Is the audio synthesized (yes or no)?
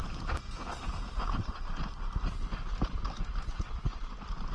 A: no